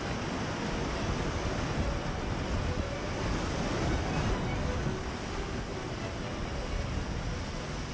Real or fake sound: real